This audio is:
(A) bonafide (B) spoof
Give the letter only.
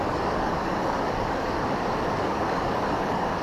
B